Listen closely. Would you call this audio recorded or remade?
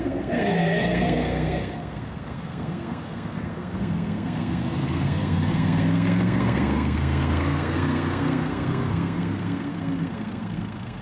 remade